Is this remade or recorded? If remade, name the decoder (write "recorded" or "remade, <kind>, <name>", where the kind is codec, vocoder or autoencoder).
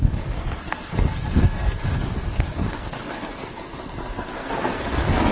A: remade, codec, SNAC